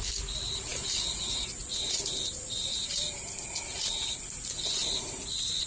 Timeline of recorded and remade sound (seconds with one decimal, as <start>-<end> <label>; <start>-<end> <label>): 0.0-5.7 recorded